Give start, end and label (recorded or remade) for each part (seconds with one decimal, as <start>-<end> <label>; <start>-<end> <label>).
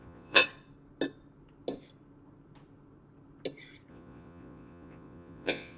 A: 0.0-0.4 remade; 0.4-3.9 recorded; 3.9-5.8 remade